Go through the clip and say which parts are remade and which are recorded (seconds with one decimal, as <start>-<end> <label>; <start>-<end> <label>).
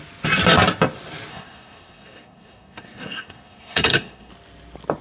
0.0-1.3 recorded; 1.3-4.3 remade; 4.3-5.0 recorded